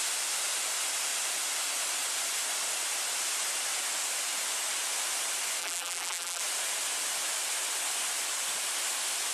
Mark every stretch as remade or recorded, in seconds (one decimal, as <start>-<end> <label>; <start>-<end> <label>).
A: 0.0-5.6 recorded; 5.6-6.4 remade; 6.4-9.3 recorded